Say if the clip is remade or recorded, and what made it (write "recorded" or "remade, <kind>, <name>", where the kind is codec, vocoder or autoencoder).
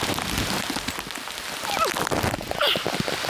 recorded